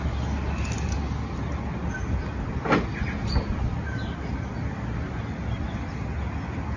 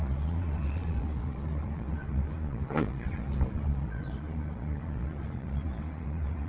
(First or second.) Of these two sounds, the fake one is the second